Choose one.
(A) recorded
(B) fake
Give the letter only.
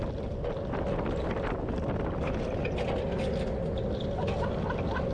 A